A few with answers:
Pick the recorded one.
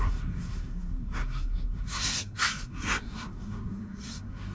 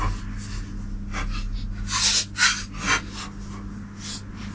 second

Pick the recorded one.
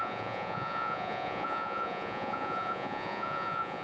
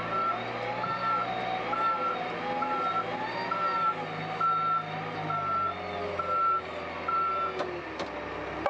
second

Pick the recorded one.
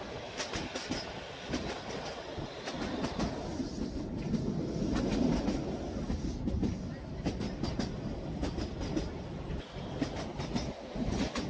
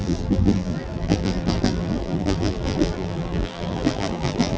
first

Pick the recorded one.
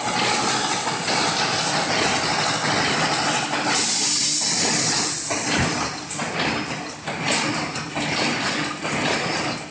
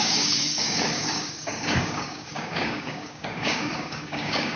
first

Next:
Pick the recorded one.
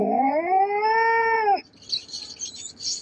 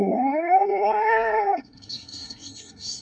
first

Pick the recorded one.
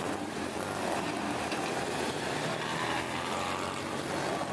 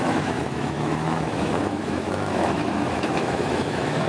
first